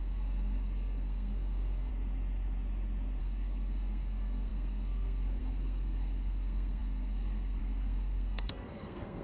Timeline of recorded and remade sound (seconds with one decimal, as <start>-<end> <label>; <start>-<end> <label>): 0.0-1.9 remade; 1.9-3.2 recorded; 3.2-9.2 remade